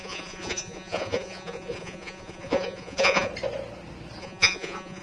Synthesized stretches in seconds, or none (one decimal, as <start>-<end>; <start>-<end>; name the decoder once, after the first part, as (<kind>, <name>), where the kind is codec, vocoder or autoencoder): 0.0-3.3 (vocoder, Vocos); 4.2-5.0